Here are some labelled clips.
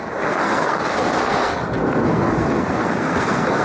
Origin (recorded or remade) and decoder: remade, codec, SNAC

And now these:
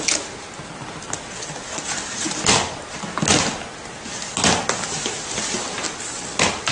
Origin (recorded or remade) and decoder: recorded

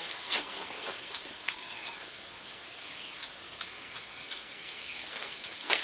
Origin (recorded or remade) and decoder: remade, codec, SNAC